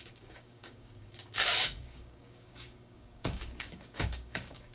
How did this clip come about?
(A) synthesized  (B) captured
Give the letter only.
A